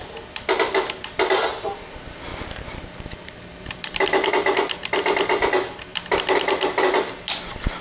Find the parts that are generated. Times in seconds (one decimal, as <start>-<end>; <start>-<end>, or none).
2.3-4.3